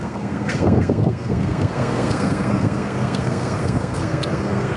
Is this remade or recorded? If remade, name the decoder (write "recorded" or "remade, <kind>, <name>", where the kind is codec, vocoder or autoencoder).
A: remade, codec, SNAC